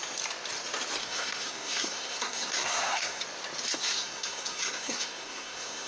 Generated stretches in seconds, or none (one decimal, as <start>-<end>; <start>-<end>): 1.0-3.2; 3.7-5.9